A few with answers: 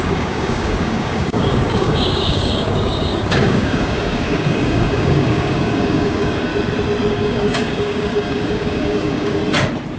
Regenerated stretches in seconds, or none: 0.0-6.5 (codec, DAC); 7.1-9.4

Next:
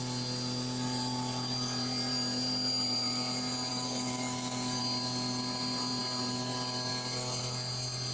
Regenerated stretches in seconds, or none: 3.7-4.8 (codec, DAC)